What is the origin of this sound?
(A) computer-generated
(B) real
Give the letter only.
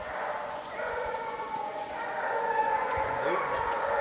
A